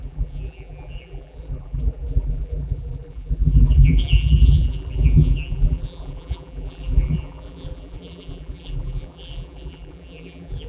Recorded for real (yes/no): no